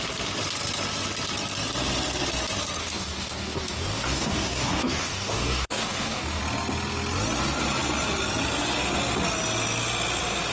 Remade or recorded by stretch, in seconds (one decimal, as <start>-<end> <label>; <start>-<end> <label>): 0.0-2.8 recorded; 2.8-6.4 remade; 6.4-10.5 recorded